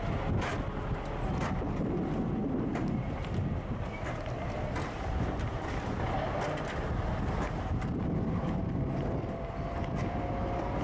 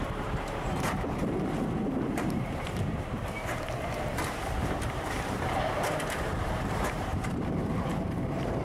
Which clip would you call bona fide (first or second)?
first